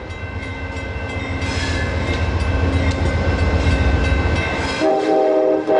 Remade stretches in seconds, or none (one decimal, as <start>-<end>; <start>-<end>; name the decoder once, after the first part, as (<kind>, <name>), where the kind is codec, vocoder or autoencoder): 4.9-5.8 (autoencoder, DAC-VAE)